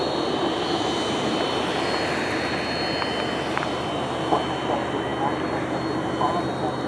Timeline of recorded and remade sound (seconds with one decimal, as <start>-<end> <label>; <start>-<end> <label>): 0.0-6.9 recorded